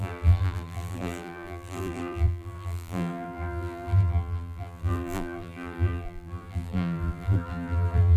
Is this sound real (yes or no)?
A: no